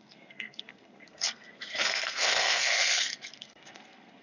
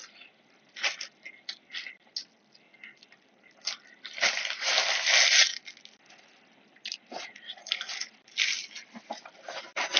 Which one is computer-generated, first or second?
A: first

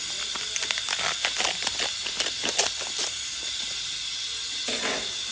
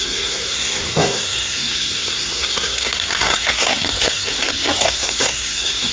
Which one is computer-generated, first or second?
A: second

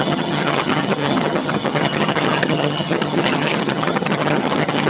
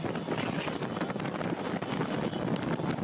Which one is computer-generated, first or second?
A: first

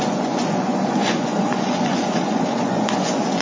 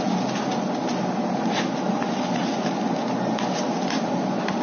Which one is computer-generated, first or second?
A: first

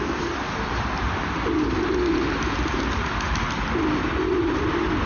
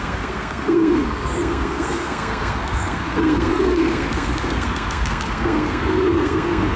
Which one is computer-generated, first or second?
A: second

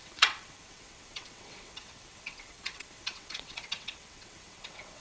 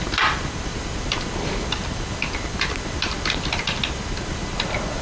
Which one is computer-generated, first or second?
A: first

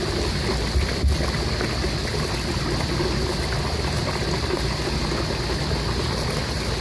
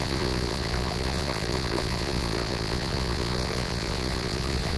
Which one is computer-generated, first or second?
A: second